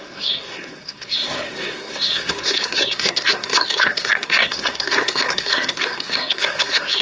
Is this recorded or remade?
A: remade